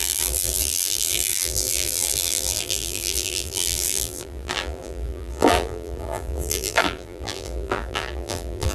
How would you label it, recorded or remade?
remade